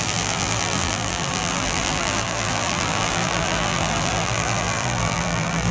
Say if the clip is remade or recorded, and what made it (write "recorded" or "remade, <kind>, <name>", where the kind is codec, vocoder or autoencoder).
remade, vocoder, BigVGAN v2